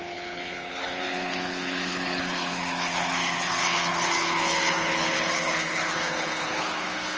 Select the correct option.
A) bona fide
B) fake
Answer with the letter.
B